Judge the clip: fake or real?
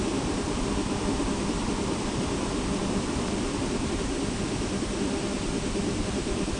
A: real